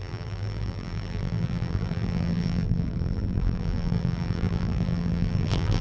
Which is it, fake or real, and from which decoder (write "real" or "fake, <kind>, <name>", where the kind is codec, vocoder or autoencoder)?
fake, vocoder, BigVGAN v2